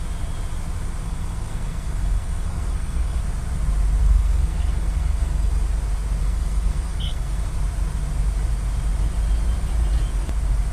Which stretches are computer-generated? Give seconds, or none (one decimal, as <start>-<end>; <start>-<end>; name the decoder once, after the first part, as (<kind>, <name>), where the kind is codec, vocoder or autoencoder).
1.0-3.2 (codec, SNAC); 4.0-5.5; 6.2-7.5